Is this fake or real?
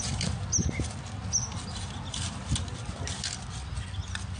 real